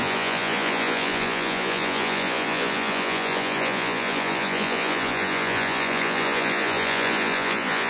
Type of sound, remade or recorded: remade